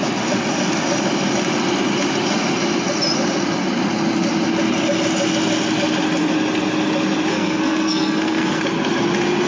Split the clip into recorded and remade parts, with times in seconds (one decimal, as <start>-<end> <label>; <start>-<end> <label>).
0.0-7.3 recorded; 7.3-8.6 remade; 8.6-9.5 recorded